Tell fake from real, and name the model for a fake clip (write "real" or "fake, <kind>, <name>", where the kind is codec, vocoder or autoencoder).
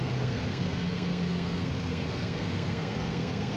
fake, codec, SNAC